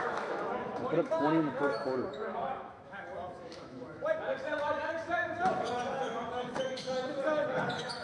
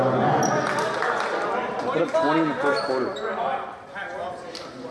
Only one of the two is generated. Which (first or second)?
first